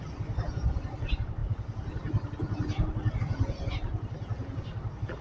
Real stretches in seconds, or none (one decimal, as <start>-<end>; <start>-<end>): 0.0-5.2